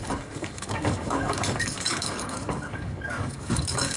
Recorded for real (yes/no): no